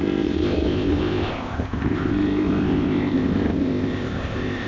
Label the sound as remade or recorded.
remade